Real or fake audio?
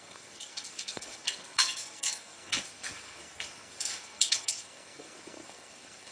fake